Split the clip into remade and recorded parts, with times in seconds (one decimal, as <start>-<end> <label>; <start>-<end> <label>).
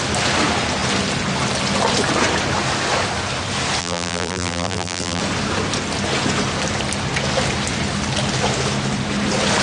0.0-3.8 recorded; 3.8-5.2 remade; 5.2-9.6 recorded